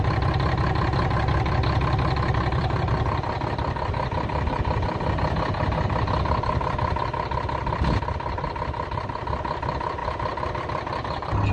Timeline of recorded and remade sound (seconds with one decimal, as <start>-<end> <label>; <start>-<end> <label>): 0.0-11.5 recorded